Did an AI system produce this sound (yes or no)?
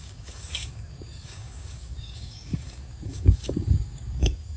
yes